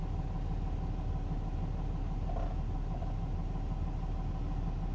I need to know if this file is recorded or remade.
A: recorded